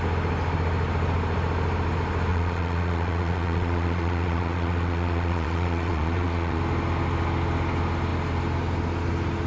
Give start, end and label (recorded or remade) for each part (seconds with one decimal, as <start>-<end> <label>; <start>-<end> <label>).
0.0-2.3 recorded; 2.3-6.6 remade; 6.6-9.5 recorded